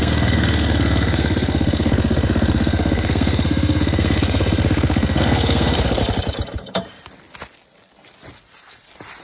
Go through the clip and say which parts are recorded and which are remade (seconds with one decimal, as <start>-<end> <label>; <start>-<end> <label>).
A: 0.0-6.0 remade; 6.0-9.2 recorded